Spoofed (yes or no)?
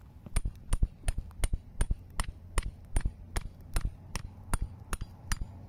no